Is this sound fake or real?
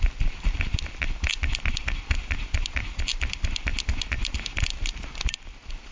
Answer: real